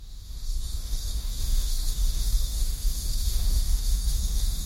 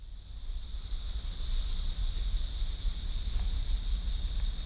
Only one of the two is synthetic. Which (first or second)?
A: first